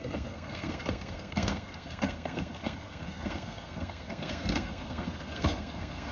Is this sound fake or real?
fake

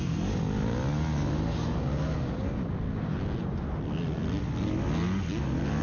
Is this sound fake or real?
real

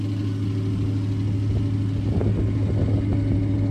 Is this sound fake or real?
real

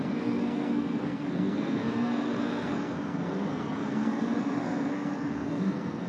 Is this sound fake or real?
fake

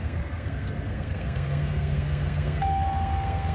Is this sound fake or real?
fake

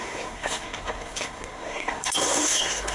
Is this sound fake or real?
fake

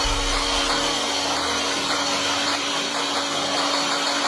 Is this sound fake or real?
real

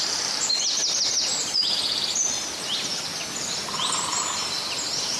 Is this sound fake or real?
real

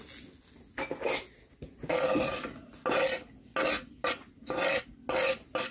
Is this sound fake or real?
real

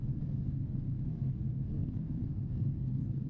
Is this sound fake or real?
fake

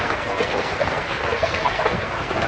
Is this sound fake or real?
fake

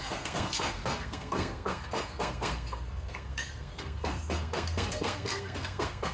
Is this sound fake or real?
fake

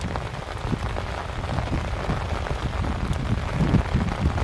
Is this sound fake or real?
real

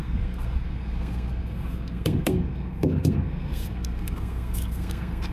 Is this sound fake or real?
fake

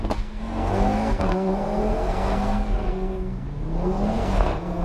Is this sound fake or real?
fake